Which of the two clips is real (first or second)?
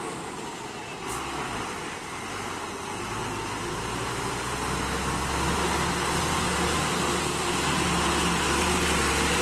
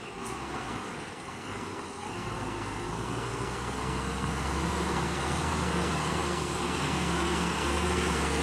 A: first